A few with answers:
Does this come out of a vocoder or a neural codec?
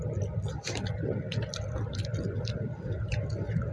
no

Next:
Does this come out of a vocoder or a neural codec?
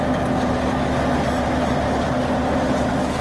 no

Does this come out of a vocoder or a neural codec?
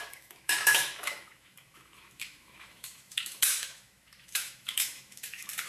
yes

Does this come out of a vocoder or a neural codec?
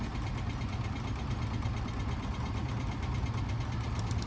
no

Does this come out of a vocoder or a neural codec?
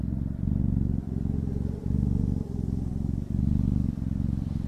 yes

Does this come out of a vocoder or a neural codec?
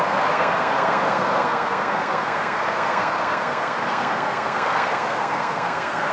yes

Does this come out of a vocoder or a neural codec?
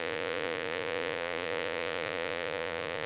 yes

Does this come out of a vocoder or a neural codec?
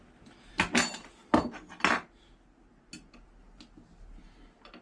no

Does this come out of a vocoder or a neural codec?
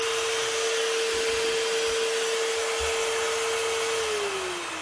no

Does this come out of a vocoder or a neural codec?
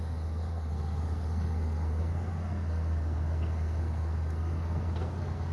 yes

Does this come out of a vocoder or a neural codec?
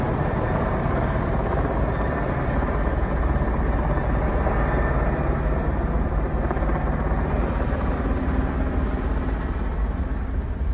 no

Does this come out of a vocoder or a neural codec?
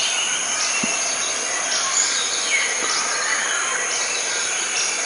no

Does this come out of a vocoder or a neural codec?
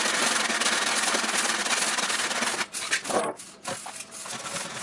no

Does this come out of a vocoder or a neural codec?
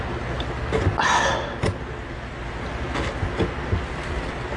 no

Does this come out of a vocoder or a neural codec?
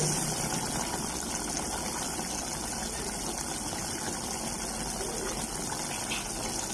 no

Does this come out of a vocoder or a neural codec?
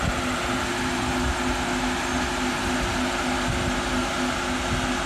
no